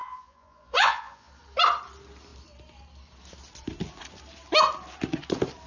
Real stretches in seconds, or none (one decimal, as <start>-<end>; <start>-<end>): 1.3-5.7